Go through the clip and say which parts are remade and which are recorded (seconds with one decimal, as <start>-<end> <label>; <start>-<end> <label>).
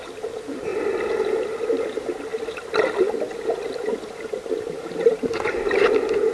0.0-0.7 remade; 0.7-1.3 recorded; 1.3-2.3 remade; 2.3-6.3 recorded